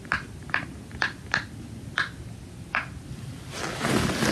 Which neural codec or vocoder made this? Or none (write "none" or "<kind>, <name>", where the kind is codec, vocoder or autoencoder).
none